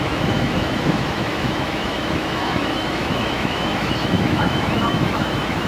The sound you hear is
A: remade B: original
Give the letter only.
A